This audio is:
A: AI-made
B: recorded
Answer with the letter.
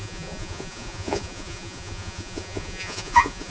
A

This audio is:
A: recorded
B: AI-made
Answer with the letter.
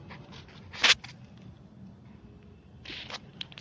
A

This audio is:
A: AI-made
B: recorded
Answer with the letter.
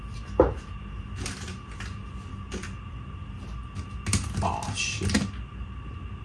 B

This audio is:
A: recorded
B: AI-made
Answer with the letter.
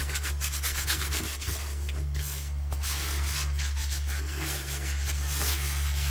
B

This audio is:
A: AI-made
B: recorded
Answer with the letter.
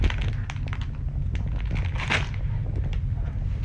B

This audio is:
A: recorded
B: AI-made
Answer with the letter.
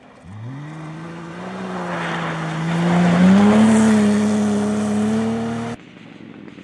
A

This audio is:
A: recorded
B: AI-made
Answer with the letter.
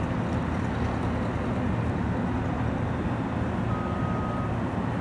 A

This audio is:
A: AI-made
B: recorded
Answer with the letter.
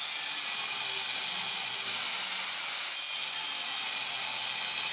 B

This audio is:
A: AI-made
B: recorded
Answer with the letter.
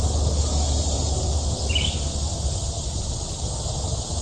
B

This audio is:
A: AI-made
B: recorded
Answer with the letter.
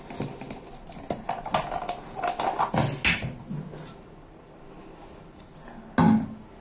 B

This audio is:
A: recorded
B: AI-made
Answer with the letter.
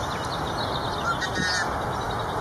A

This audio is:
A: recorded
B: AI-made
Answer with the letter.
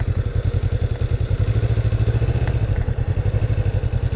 A